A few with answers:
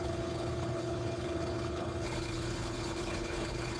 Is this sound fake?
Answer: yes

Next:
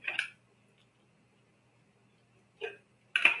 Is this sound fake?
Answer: no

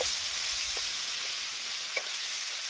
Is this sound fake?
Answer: yes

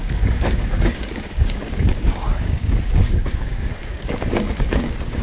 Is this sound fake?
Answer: yes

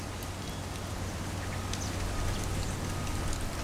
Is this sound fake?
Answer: no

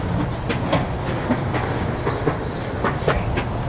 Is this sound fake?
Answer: no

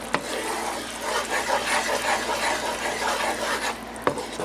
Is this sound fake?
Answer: no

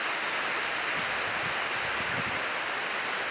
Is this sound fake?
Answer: no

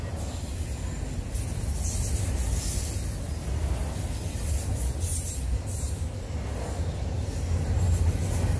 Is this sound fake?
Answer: no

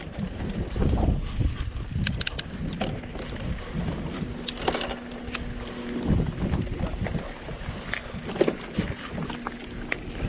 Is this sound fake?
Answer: no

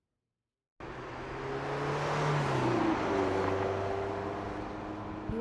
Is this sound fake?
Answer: no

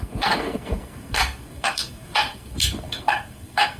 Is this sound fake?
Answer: yes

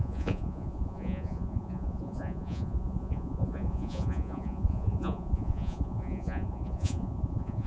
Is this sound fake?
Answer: yes